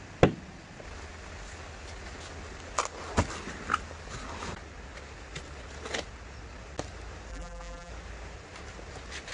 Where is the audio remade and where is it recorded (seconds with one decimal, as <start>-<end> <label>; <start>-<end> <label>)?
0.0-7.3 recorded; 7.3-7.9 remade; 7.9-9.3 recorded